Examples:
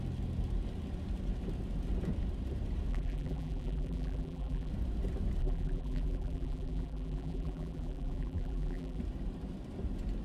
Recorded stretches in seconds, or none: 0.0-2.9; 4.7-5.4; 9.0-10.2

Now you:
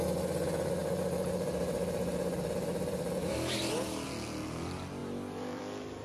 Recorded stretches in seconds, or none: 0.0-0.8; 1.5-2.7; 3.6-5.0; 5.6-6.0

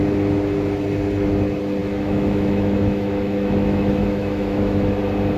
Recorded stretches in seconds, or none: 0.0-1.8; 5.0-5.4